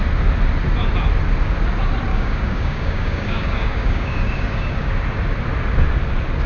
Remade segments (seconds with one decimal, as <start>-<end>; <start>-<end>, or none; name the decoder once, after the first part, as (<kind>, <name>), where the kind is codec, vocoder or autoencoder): 2.1-4.9 (codec, DAC)